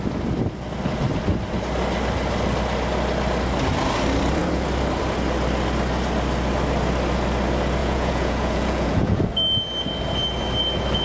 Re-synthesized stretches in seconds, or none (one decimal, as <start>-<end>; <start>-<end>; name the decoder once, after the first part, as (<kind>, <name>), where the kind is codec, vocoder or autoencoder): 7.8-9.2 (vocoder, Vocos)